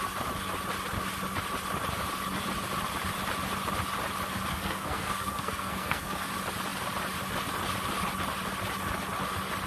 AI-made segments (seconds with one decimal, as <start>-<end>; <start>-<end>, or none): 4.5-6.3